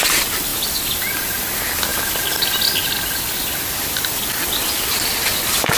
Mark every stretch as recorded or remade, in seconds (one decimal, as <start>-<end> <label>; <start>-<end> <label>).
0.0-5.8 recorded